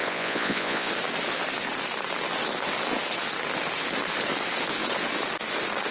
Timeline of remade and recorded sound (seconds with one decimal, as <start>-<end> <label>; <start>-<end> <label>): 0.0-0.9 remade; 0.9-5.9 recorded